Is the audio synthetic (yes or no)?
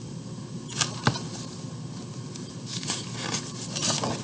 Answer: no